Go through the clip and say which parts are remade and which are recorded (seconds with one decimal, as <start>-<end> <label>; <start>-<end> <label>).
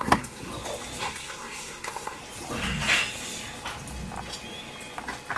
0.0-0.5 remade; 0.5-1.0 recorded; 1.0-2.2 remade; 2.2-5.4 recorded